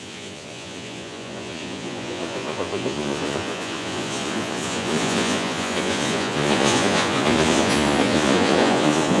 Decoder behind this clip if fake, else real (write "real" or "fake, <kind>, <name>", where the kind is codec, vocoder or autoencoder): fake, vocoder, Vocos